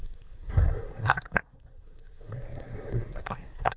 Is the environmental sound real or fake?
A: fake